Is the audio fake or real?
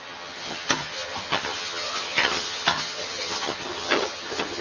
fake